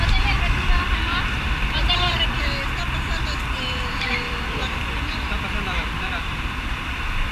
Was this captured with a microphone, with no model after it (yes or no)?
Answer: no